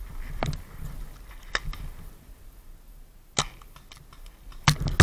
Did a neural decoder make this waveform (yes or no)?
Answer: no